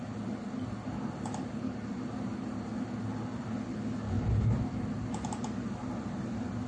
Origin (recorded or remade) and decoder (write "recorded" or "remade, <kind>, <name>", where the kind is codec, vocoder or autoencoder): recorded